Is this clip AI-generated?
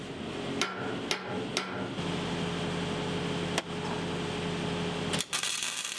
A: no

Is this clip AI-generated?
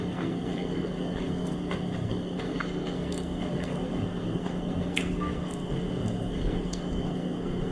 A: yes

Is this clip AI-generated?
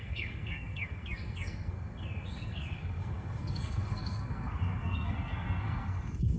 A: yes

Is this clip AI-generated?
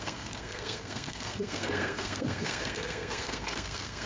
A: yes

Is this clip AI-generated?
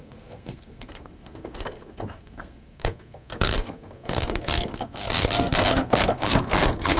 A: yes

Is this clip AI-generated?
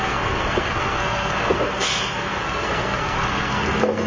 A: yes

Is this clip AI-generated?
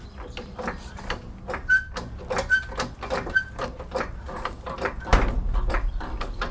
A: no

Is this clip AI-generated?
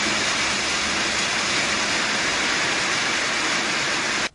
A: no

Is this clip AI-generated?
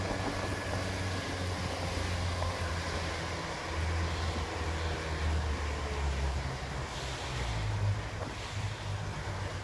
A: no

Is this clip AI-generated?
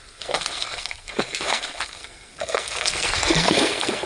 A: yes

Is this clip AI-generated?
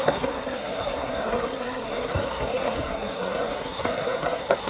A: yes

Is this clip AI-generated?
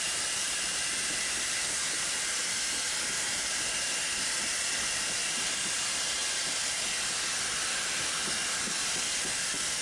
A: no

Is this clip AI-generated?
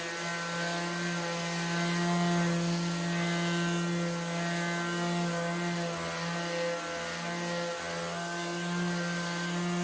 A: no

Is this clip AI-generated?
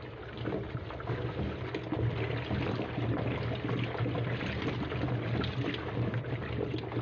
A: no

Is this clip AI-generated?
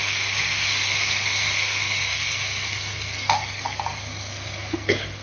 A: yes